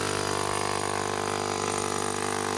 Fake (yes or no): no